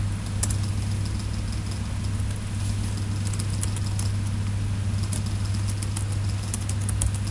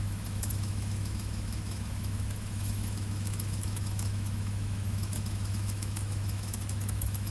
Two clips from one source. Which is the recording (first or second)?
first